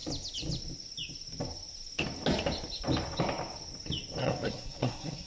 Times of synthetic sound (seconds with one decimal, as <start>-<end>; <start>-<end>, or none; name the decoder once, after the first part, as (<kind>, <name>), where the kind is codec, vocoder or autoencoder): 4.2-5.3 (codec, SNAC)